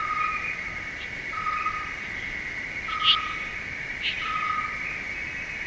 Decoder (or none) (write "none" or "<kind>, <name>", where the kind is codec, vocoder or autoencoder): none